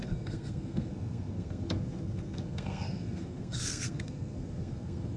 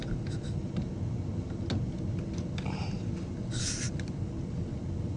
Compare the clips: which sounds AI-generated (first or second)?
first